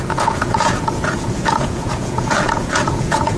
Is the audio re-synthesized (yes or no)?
yes